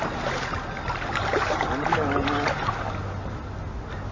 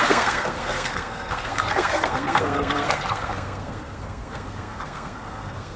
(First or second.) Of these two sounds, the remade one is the second